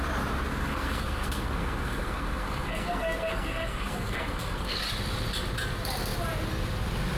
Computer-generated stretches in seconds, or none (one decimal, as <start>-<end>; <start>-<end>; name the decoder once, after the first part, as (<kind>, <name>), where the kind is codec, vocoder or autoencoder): 0.5-4.8 (codec, SNAC)